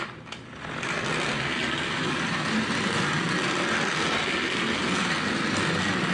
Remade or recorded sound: recorded